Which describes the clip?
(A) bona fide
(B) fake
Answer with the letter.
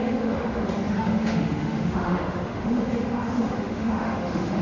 B